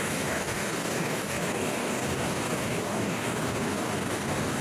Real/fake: fake